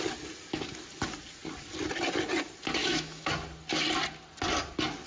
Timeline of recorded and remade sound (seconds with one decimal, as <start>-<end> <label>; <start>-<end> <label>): 0.0-2.8 recorded; 2.8-3.3 remade; 3.3-5.1 recorded